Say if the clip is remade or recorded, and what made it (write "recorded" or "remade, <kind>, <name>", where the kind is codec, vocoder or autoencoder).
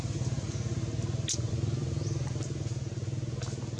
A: recorded